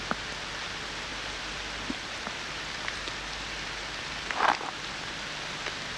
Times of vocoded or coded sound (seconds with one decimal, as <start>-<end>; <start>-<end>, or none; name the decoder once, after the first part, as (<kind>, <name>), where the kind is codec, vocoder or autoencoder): 1.1-2.6 (vocoder, BigVGAN v2)